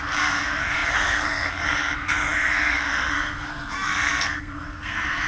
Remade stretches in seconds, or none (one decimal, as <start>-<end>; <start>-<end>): 0.0-5.3